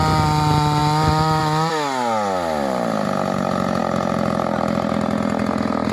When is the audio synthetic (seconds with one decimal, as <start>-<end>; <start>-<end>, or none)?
none